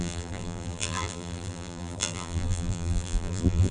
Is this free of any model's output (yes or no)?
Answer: no